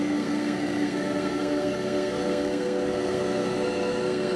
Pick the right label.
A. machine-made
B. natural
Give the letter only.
A